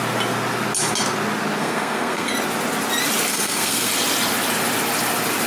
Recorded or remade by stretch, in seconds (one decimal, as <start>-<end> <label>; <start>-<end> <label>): 0.0-1.6 recorded; 1.6-2.3 remade; 2.3-3.3 recorded; 3.3-3.9 remade; 3.9-5.5 recorded